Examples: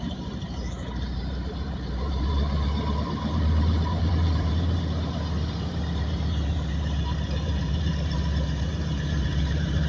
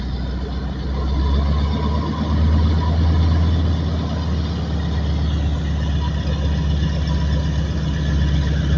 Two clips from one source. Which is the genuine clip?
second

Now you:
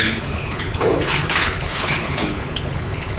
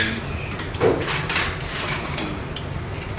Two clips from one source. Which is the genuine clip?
second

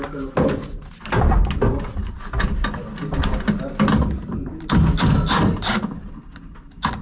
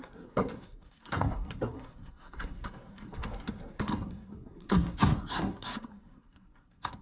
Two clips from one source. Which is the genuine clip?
first